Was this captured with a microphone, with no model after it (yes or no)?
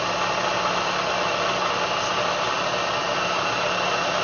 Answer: yes